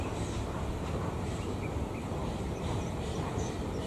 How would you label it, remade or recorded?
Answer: remade